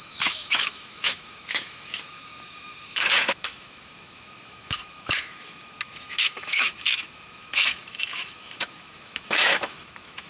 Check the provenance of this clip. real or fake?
fake